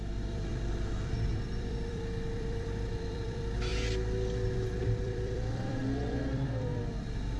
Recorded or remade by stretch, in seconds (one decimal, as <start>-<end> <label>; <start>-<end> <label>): 0.0-3.7 remade; 3.7-4.8 recorded; 4.8-7.4 remade